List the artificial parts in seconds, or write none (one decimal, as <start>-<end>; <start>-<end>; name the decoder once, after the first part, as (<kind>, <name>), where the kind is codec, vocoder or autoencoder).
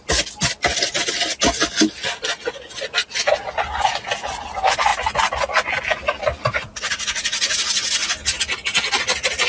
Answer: 6.4-7.6 (vocoder, Vocos)